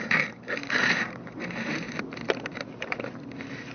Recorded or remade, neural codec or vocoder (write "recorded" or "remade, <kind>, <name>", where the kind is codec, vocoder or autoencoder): remade, vocoder, BigVGAN v2